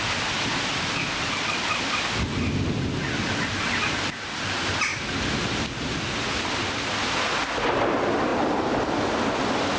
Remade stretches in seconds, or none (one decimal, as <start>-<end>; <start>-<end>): none